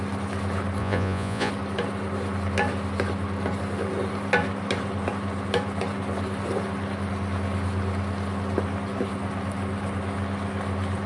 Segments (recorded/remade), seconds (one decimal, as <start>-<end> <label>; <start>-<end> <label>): 0.0-0.8 recorded; 0.8-1.5 remade; 1.5-11.1 recorded